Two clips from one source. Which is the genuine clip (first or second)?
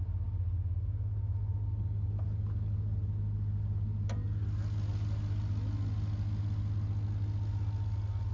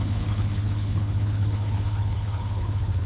first